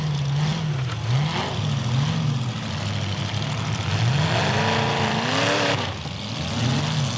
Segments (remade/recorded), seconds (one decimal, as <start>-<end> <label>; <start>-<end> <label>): 0.0-7.2 recorded